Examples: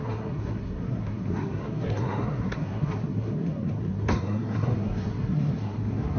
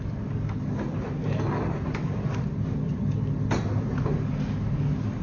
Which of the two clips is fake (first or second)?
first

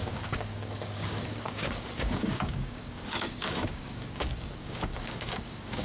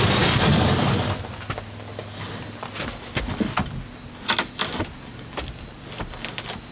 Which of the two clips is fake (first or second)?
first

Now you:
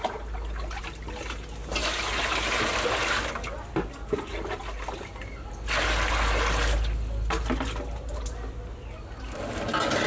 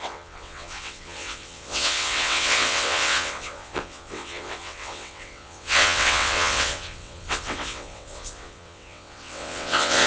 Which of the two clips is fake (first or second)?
second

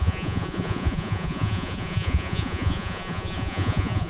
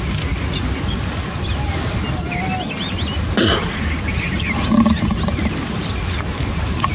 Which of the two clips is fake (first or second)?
first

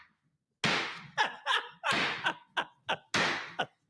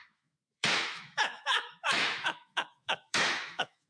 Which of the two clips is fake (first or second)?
second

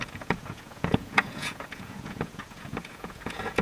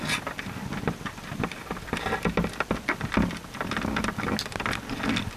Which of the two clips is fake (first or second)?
first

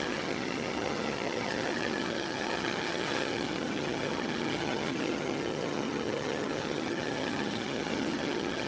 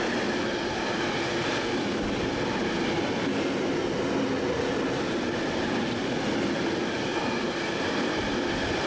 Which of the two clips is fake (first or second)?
first